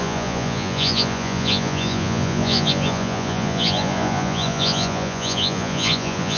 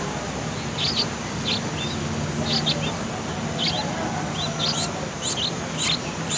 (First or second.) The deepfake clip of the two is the first